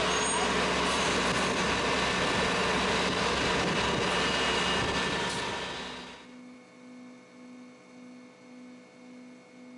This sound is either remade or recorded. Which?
recorded